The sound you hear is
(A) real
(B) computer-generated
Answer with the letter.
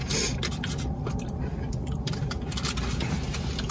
A